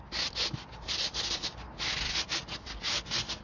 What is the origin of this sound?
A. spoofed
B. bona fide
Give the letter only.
B